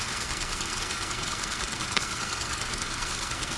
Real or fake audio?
fake